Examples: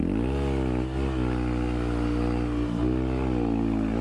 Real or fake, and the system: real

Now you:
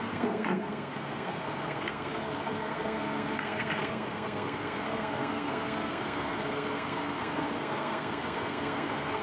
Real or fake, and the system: fake, codec, SNAC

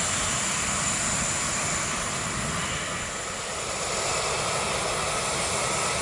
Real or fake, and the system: real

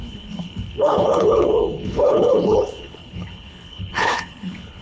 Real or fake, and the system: fake, codec, HILCodec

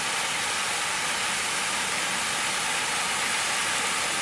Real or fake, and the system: real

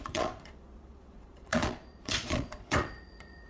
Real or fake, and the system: fake, vocoder, Vocos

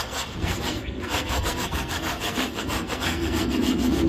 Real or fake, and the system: fake, codec, SNAC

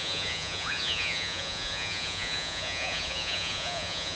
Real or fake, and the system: fake, vocoder, Vocos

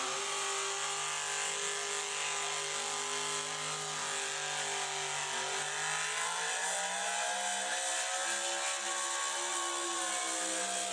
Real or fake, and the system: real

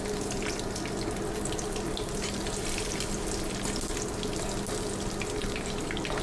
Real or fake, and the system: real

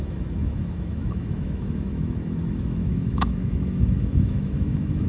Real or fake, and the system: fake, autoencoder, DAC-VAE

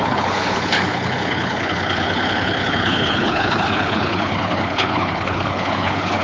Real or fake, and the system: fake, codec, HILCodec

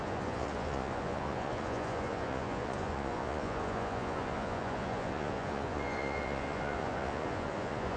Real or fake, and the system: fake, vocoder, Vocos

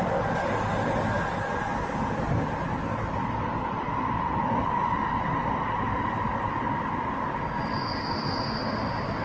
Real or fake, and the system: real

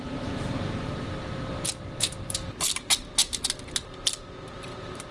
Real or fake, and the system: fake, vocoder, BigVGAN v2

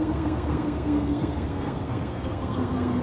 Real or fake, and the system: fake, codec, SNAC